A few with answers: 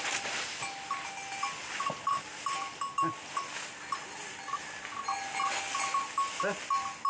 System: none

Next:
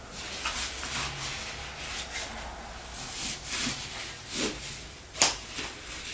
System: none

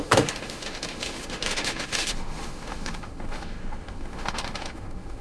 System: autoencoder, DAC-VAE